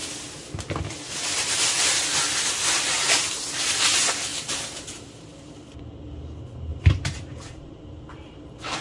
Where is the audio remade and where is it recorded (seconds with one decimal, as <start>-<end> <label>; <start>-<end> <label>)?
0.0-4.3 recorded; 4.3-5.5 remade; 5.5-6.7 recorded; 6.7-7.8 remade; 7.8-8.8 recorded